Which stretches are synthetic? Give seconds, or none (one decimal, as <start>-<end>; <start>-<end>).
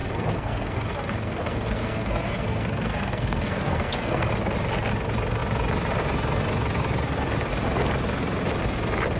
0.0-4.3